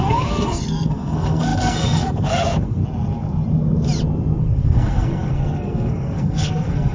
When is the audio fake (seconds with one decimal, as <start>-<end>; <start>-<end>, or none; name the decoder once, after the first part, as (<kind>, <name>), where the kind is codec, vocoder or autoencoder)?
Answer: 0.0-2.8 (codec, SNAC); 4.4-6.9